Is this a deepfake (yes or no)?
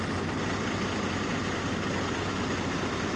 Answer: no